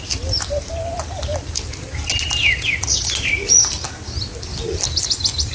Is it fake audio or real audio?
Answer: real